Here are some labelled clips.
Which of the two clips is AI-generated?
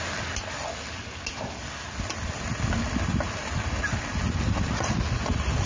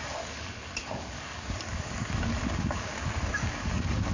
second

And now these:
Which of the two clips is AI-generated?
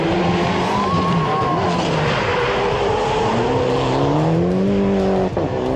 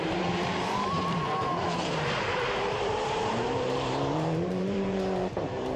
second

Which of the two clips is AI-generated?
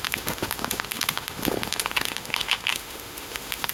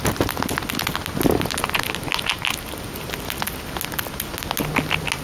first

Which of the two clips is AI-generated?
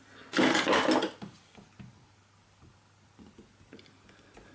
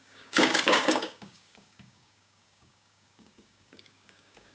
second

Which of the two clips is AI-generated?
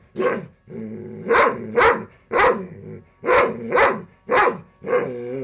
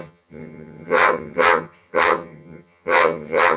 second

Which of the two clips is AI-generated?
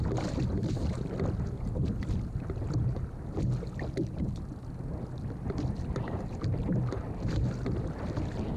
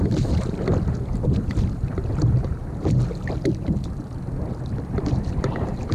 second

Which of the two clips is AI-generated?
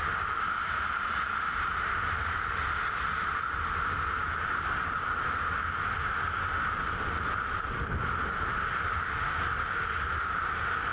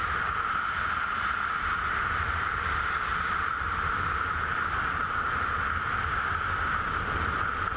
second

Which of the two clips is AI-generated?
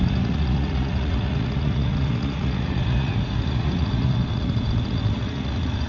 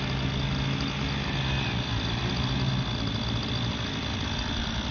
first